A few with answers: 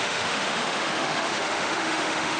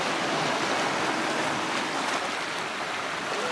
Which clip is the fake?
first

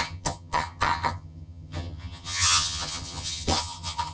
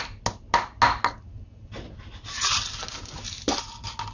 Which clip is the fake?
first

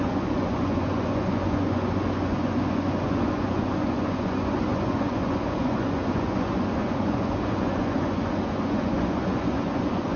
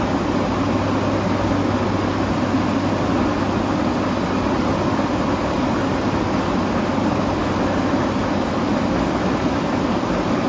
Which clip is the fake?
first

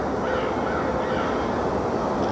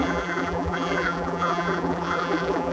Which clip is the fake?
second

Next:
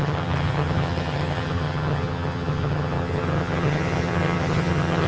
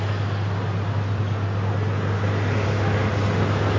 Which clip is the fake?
first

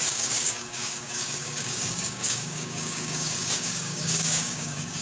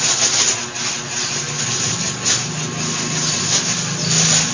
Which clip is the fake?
first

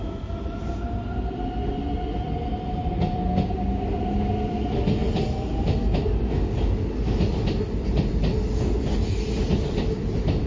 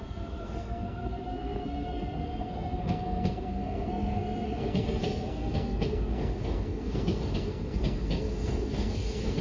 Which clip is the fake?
second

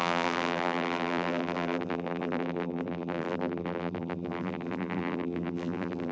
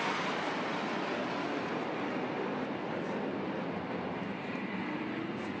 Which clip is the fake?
first